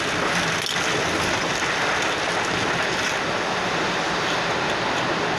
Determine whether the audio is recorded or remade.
recorded